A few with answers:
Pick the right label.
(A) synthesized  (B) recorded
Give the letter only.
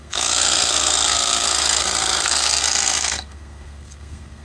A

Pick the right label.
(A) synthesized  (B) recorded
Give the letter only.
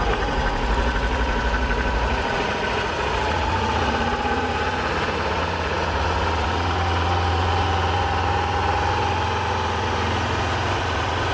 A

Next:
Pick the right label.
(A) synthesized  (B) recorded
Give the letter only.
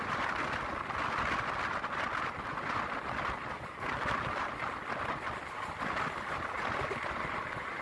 B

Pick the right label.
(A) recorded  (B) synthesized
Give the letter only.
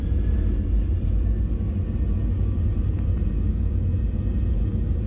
A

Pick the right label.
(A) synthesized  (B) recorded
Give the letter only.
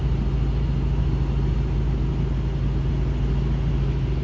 B